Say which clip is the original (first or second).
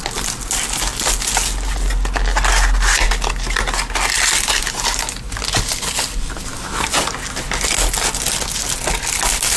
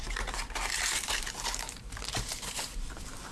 first